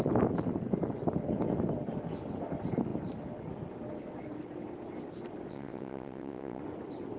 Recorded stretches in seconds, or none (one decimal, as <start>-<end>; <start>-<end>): 0.0-5.5; 6.6-7.2